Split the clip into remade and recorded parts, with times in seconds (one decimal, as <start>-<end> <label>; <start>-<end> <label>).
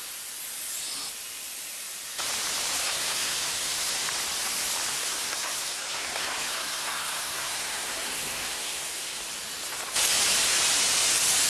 0.0-2.8 recorded; 2.8-3.9 remade; 3.9-4.9 recorded; 4.9-9.2 remade; 9.2-11.5 recorded